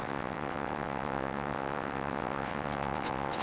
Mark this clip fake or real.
fake